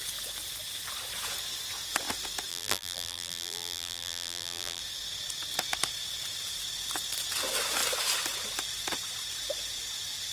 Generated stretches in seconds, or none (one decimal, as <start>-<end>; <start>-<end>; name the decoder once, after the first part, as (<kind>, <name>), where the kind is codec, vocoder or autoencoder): 2.5-4.8 (vocoder, BigVGAN v2)